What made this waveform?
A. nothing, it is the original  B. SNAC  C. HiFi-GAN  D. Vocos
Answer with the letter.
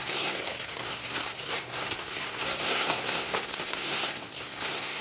B